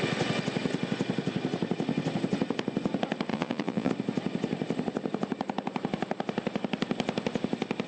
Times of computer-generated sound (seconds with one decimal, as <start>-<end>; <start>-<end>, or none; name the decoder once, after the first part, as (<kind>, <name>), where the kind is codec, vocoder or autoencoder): 3.3-3.9 (vocoder, Vocos)